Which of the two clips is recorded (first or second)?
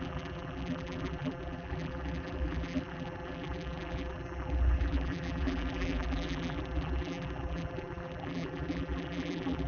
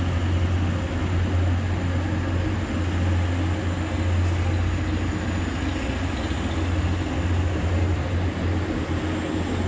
second